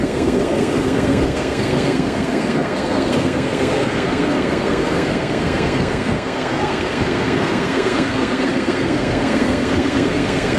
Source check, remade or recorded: remade